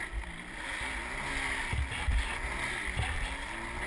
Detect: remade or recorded recorded